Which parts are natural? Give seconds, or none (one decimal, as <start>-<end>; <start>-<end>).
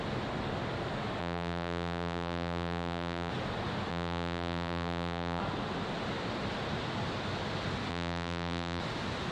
0.0-1.2; 3.3-3.9; 5.4-7.9; 8.8-9.3